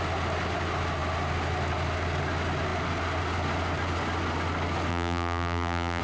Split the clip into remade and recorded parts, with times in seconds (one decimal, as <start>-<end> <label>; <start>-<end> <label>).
0.0-4.9 recorded; 4.9-6.0 remade